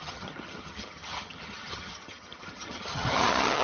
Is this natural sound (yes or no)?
no